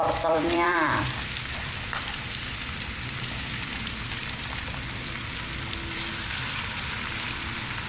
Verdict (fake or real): fake